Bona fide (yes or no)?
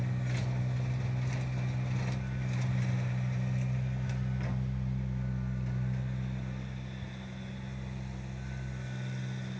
yes